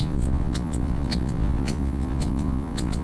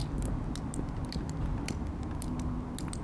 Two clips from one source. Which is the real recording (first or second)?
second